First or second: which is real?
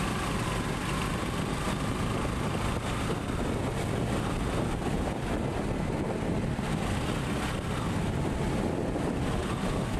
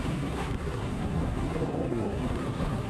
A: first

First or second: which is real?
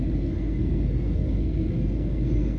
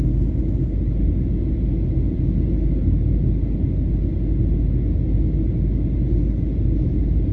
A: second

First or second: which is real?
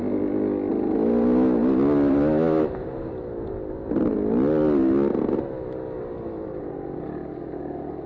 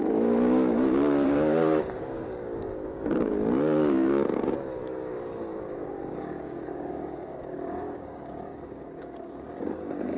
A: first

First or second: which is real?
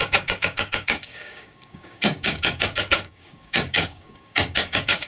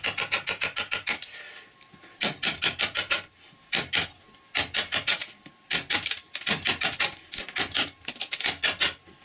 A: second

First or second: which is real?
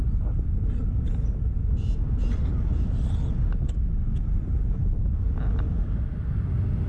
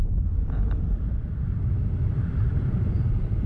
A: first